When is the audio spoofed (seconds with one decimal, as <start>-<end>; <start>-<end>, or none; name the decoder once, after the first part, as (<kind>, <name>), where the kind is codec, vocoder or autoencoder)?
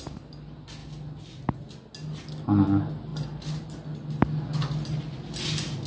none